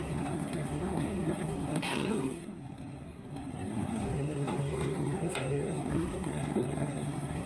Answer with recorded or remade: remade